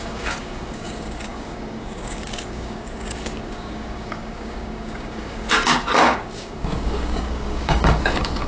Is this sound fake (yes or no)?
yes